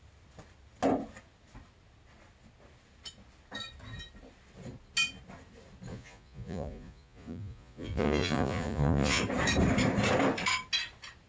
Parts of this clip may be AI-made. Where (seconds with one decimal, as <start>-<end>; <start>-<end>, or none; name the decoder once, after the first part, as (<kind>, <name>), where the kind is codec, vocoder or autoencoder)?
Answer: 5.9-9.2 (vocoder, Vocos)